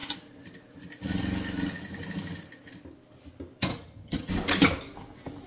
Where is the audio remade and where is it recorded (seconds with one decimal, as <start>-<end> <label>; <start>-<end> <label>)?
0.0-3.7 recorded; 3.7-4.3 remade; 4.3-5.5 recorded